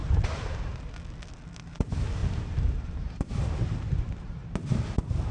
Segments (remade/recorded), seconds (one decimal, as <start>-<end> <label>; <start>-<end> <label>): 0.0-0.8 remade; 0.8-2.2 recorded; 2.2-4.8 remade; 4.8-5.3 recorded